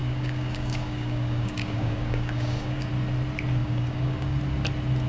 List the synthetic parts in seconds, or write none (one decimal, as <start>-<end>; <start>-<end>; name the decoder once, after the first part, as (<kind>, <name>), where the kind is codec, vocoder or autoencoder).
0.0-2.9 (codec, DAC); 3.6-4.4